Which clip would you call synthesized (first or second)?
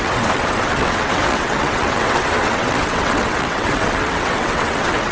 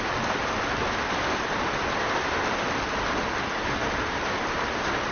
first